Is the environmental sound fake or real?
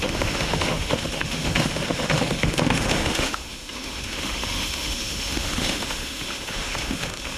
fake